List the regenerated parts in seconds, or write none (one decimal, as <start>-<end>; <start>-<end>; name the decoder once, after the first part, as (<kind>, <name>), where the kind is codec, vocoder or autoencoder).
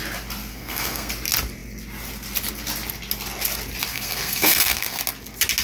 0.5-1.1 (codec, SNAC); 3.9-5.0